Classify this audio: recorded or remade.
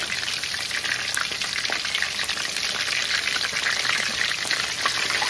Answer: recorded